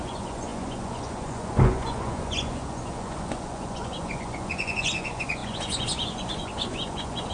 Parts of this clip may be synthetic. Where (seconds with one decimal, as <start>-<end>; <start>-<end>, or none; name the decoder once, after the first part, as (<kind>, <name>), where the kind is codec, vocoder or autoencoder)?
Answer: 0.0-7.3 (vocoder, Vocos)